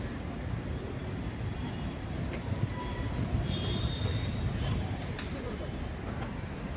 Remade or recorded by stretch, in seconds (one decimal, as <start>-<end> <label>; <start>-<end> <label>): 0.0-6.8 remade